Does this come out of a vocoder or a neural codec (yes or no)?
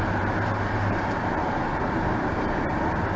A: yes